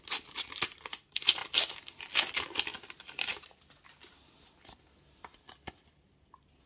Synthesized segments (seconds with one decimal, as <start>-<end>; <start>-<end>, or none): none